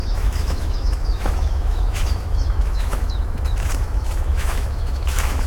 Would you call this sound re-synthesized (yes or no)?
yes